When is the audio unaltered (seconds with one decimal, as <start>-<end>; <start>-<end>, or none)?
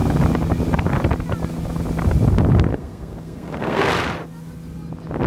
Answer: 0.0-2.7; 3.9-5.3